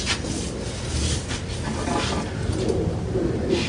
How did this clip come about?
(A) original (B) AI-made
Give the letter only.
A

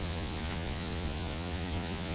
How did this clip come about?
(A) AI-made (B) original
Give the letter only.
A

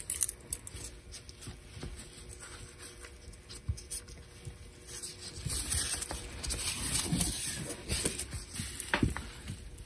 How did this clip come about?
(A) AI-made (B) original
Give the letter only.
B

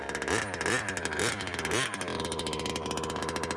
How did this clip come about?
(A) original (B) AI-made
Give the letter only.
A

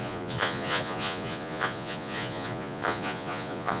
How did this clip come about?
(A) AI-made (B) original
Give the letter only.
A